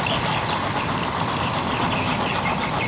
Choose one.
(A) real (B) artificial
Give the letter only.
A